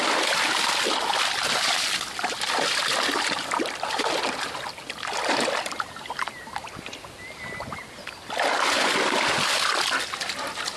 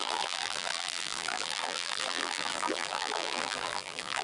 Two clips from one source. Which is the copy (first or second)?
second